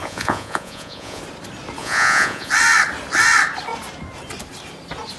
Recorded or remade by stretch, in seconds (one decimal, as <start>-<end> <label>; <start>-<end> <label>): 0.0-1.2 remade; 1.2-1.8 recorded; 1.8-2.5 remade; 2.5-5.2 recorded